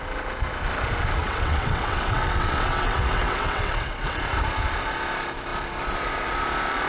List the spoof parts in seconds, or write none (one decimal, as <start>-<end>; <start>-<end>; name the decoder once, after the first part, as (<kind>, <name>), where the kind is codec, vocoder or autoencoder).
1.2-4.2 (vocoder, WaveNeXt)